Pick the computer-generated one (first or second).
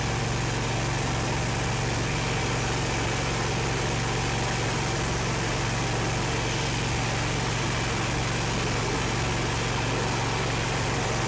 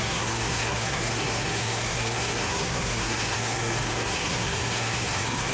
second